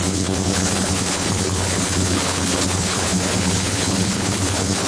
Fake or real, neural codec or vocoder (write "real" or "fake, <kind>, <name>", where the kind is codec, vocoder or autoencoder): fake, codec, HILCodec